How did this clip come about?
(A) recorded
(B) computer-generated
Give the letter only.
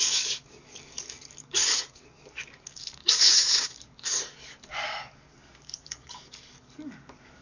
B